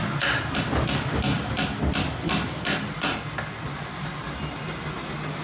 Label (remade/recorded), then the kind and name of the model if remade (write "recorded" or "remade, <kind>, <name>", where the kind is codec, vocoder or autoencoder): recorded